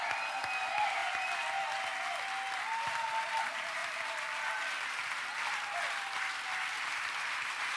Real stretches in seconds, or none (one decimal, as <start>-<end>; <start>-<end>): 0.0-7.8